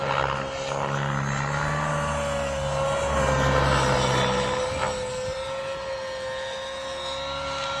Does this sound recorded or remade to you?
recorded